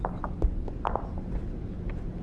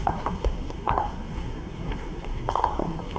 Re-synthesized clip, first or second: second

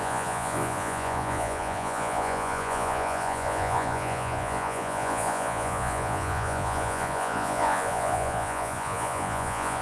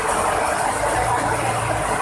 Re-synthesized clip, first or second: first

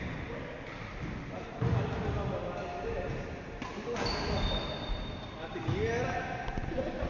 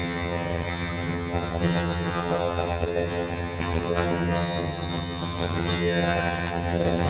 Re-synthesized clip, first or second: second